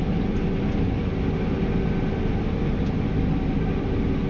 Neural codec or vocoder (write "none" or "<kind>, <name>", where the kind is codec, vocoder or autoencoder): none